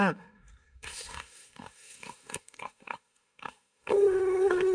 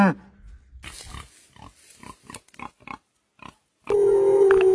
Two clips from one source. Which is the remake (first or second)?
first